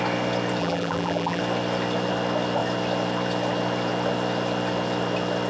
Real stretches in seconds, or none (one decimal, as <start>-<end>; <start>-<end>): 0.0-0.6; 1.4-5.5